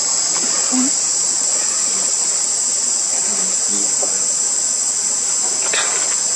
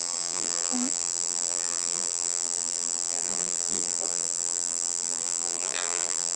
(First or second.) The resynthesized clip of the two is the second